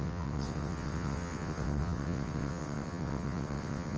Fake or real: fake